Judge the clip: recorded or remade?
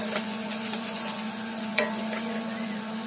remade